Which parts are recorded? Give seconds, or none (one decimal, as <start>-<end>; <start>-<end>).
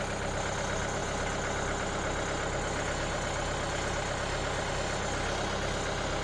0.0-6.2